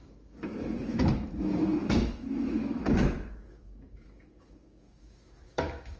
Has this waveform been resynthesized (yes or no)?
yes